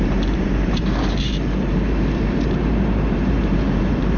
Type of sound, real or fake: fake